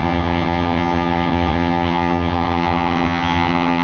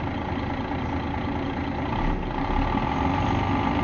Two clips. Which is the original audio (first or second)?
second